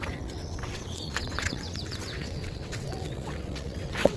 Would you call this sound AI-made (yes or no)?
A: yes